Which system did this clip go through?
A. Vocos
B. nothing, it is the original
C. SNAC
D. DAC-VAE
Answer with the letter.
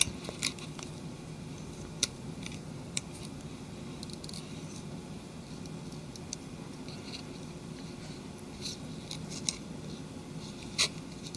B